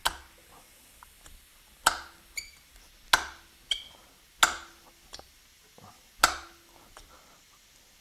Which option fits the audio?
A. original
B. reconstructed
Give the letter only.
A